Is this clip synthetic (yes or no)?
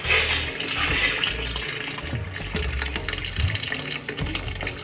no